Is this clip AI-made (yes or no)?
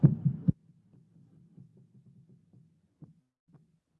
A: no